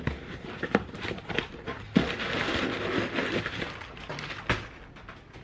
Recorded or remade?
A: recorded